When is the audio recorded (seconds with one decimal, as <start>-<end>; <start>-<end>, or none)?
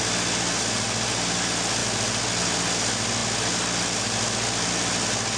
0.0-5.4